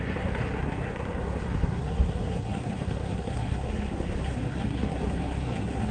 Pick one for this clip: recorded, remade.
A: remade